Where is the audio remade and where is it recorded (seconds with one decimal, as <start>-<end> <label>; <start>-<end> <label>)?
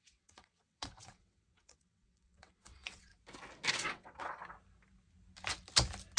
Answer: 0.0-3.1 remade; 3.1-3.7 recorded; 3.7-4.4 remade; 4.4-6.2 recorded